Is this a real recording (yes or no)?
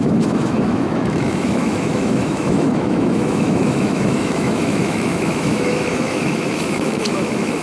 no